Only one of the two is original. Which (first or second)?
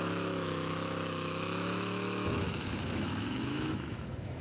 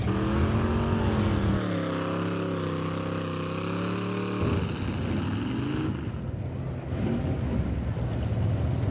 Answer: second